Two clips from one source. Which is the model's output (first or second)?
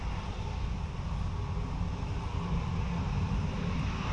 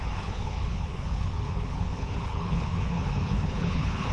second